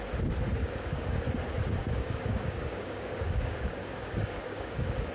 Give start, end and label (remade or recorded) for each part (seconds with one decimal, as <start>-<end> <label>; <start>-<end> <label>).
0.0-0.6 recorded; 0.6-1.2 remade; 1.2-1.8 recorded; 1.8-5.1 remade